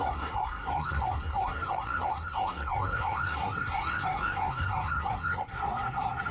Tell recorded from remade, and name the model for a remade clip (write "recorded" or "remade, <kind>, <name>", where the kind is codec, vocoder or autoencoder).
remade, codec, SNAC